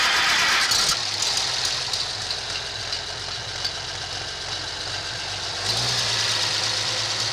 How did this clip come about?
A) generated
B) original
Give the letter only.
B